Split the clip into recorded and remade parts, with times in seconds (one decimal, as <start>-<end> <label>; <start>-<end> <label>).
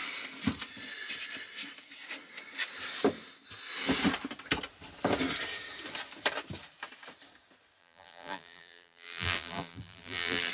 0.0-7.8 recorded; 7.8-10.5 remade